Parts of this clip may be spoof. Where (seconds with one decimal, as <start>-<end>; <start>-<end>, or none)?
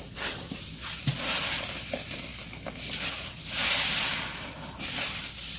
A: none